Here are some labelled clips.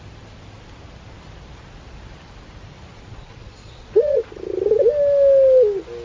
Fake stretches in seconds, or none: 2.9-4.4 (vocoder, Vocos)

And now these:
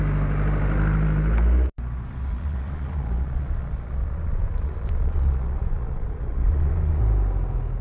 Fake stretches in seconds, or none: 2.3-7.0 (vocoder, Vocos)

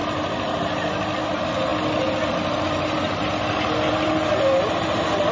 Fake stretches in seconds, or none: none

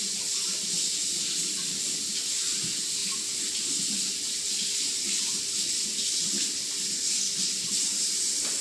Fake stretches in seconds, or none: none

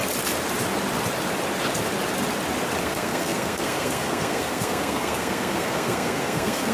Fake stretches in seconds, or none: 2.8-6.7 (codec, SNAC)

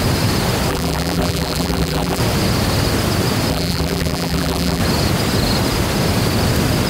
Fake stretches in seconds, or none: 0.7-2.2 (vocoder, BigVGAN v2); 3.5-4.8

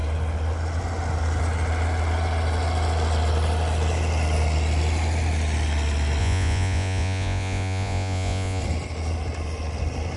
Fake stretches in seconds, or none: 6.2-8.6 (vocoder, Vocos)